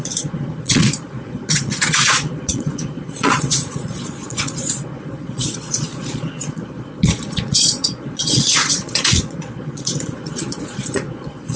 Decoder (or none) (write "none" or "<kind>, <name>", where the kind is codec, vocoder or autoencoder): vocoder, Vocos